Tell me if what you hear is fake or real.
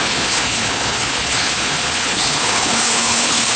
fake